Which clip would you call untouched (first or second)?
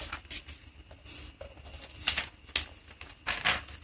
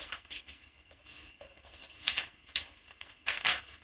first